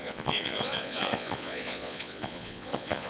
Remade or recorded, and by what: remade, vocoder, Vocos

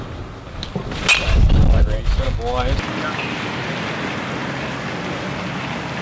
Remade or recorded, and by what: recorded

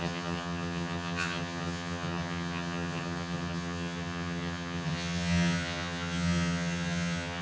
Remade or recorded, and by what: remade, vocoder, HiFi-GAN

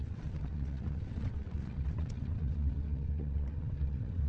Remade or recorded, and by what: remade, vocoder, WaveNeXt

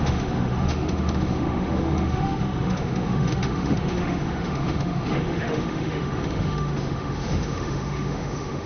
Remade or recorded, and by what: remade, autoencoder, DAC-VAE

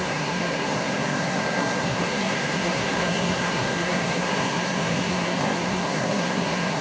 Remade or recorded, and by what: remade, codec, SNAC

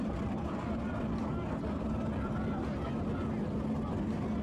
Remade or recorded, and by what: remade, vocoder, BigVGAN v2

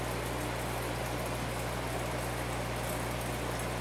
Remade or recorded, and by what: recorded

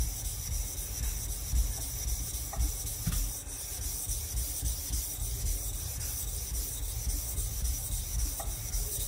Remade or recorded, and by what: recorded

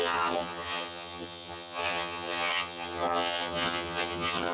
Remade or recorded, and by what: remade, vocoder, HiFi-GAN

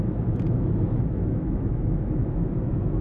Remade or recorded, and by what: remade, autoencoder, DAC-VAE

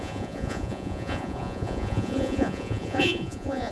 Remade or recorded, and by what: remade, vocoder, Vocos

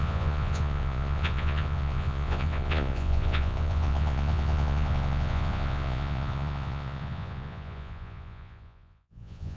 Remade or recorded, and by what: remade, vocoder, Vocos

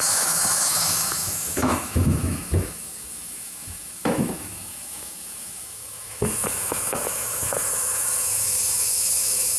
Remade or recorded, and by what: remade, autoencoder, DAC-VAE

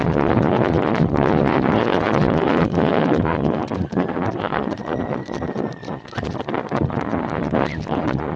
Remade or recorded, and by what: remade, vocoder, Vocos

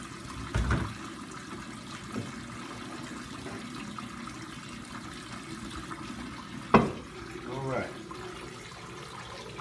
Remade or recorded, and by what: recorded